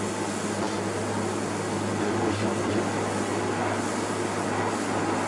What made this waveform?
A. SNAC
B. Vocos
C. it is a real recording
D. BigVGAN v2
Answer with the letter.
C